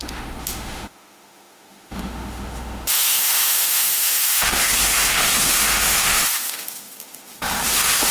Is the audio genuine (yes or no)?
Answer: no